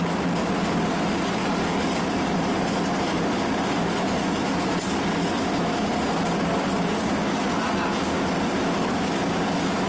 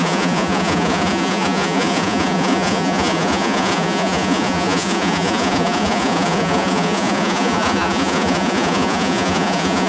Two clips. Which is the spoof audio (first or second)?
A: second